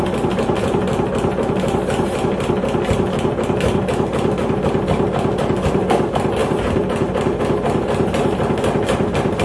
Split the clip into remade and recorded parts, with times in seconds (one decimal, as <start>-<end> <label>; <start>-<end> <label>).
0.0-9.4 recorded

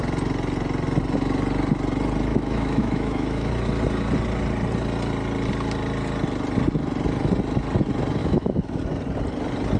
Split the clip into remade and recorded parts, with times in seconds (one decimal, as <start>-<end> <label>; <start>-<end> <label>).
0.0-2.3 recorded; 2.3-3.5 remade; 3.5-8.2 recorded; 8.2-8.8 remade; 8.8-9.8 recorded